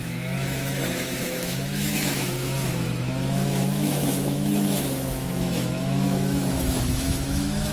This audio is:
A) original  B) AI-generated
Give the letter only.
B